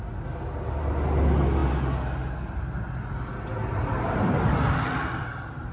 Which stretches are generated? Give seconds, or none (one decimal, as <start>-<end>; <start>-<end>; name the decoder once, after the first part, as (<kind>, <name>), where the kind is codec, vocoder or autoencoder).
3.6-4.5 (vocoder, BigVGAN v2)